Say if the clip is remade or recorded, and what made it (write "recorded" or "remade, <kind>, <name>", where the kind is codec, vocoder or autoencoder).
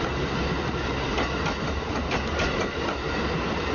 recorded